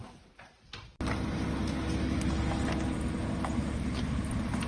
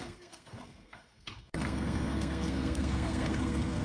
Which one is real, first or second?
first